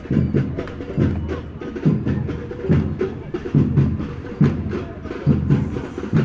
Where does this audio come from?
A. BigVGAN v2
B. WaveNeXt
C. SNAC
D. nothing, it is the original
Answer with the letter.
D